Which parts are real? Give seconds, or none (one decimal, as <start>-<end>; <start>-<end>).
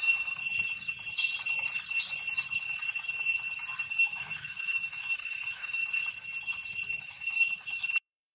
0.4-3.9; 5.8-7.0